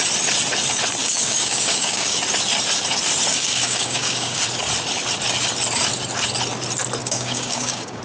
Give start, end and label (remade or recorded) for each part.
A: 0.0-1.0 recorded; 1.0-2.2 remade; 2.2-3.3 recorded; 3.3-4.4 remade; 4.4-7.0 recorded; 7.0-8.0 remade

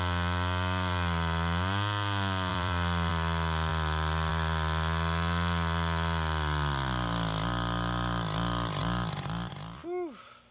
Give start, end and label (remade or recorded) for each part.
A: 0.0-2.5 recorded; 2.5-3.1 remade; 3.1-8.8 recorded; 8.8-9.5 remade; 9.5-10.5 recorded